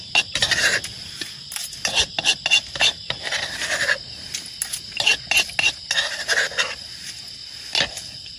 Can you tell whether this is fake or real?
real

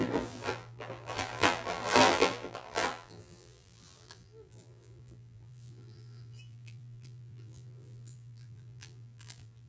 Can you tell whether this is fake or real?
fake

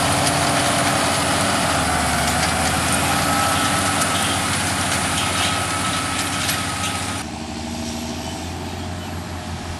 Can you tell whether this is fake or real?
real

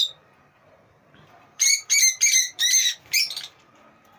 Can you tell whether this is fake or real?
fake